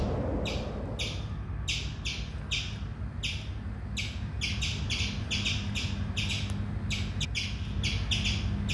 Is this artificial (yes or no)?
no